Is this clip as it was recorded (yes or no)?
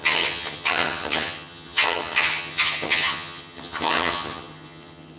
no